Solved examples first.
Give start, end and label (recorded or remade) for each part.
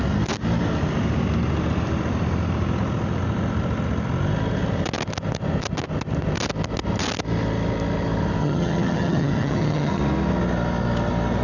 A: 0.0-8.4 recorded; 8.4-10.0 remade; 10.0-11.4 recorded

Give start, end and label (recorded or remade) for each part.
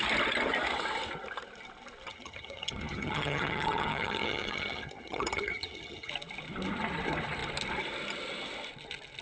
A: 0.0-2.1 recorded; 2.1-6.1 remade; 6.1-9.2 recorded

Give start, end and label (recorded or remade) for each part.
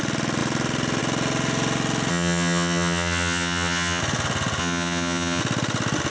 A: 0.0-2.1 recorded; 2.1-4.0 remade; 4.0-4.6 recorded; 4.6-5.4 remade; 5.4-6.1 recorded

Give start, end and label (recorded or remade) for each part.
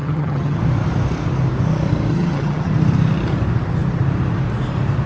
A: 0.0-0.6 remade; 0.6-2.1 recorded; 2.1-2.7 remade; 2.7-5.1 recorded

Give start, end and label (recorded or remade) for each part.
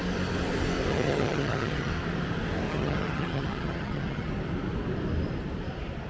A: 0.0-0.9 recorded; 0.9-1.9 remade; 1.9-2.7 recorded; 2.7-4.3 remade; 4.3-6.1 recorded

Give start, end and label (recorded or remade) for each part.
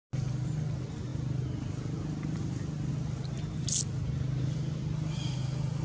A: 0.0-5.8 recorded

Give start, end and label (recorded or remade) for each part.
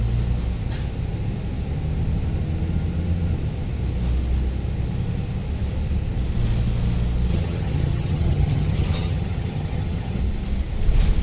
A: 0.0-7.3 recorded; 7.3-10.2 remade; 10.2-11.2 recorded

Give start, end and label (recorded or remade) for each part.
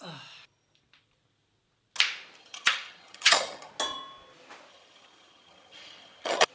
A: 0.0-2.4 recorded; 2.4-3.7 remade; 3.7-4.7 recorded; 4.7-6.5 remade